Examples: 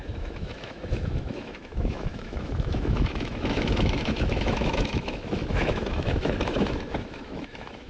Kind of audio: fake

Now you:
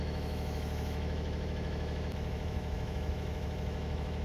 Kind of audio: fake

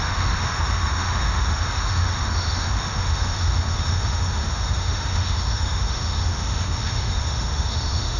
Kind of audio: fake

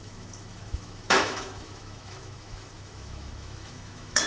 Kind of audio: fake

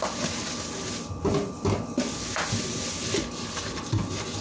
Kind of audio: real